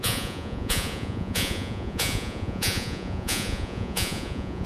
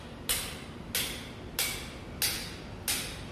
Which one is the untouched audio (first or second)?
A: second